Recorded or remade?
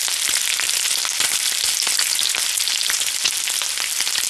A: recorded